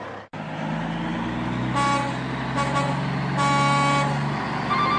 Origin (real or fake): real